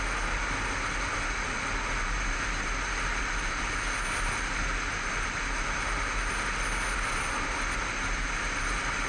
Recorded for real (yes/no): yes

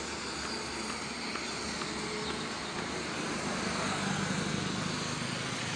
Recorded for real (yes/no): yes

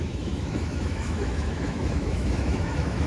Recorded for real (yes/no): no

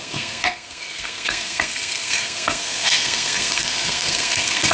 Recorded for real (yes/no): no